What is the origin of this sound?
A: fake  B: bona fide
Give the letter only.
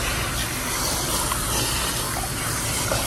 B